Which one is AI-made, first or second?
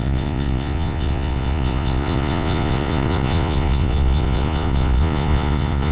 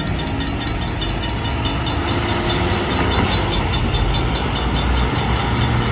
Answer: first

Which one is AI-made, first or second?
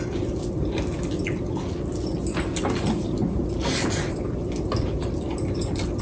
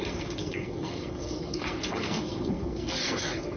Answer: second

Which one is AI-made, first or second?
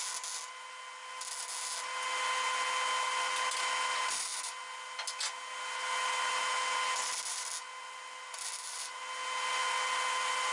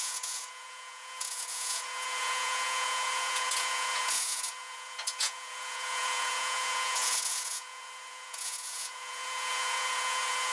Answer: second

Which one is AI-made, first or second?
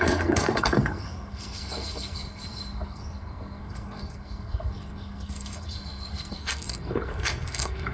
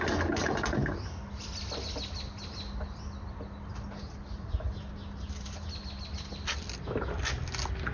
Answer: first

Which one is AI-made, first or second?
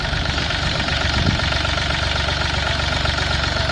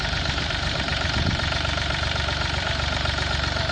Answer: second